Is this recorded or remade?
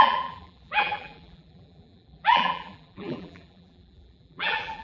remade